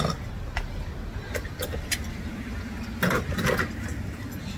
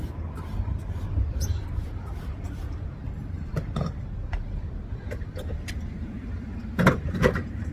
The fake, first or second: second